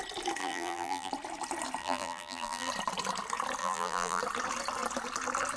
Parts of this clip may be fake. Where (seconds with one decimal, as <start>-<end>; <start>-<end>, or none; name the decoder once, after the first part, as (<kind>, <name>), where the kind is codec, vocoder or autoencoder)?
0.4-1.1 (vocoder, BigVGAN v2); 1.8-2.7; 3.6-4.2